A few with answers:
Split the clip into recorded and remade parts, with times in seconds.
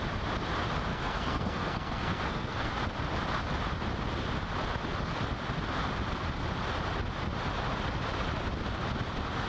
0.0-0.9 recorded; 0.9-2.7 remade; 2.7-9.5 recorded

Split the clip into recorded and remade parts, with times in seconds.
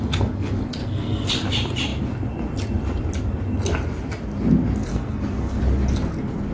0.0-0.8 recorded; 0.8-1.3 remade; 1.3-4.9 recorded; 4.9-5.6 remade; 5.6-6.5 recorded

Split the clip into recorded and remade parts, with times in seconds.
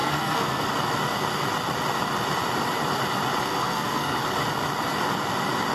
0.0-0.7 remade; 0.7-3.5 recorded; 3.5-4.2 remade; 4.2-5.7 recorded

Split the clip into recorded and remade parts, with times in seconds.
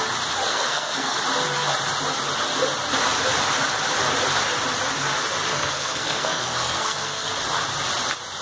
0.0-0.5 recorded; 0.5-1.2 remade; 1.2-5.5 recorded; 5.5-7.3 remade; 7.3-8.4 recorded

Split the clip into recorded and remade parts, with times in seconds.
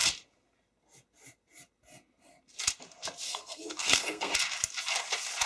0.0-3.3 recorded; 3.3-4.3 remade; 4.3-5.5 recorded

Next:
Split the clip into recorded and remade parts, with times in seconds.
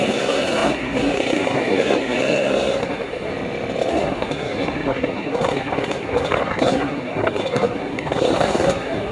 0.0-3.3 remade; 3.3-3.9 recorded; 3.9-9.1 remade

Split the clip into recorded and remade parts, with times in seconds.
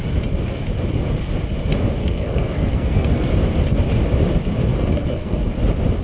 0.0-2.0 recorded; 2.0-3.3 remade; 3.3-4.7 recorded; 4.7-5.4 remade; 5.4-6.0 recorded